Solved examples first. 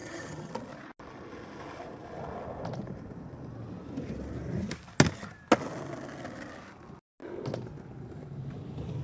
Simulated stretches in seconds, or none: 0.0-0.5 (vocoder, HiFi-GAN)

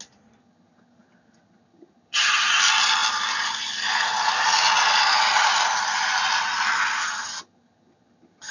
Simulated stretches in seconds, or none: 0.4-2.6 (vocoder, HiFi-GAN); 7.0-8.5